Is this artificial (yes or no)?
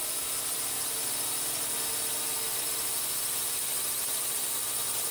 no